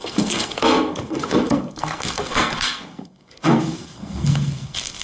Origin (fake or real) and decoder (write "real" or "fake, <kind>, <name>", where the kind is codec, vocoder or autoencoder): fake, codec, SNAC